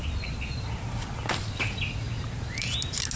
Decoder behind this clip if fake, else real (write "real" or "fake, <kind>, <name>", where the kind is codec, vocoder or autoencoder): real